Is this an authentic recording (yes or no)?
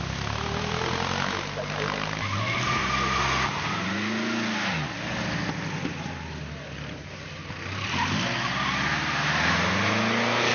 yes